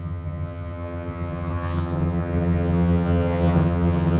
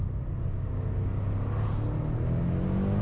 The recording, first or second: second